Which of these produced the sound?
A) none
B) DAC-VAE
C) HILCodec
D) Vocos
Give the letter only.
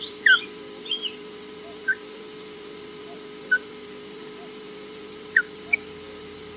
A